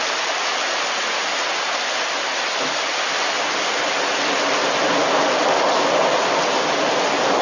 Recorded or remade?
recorded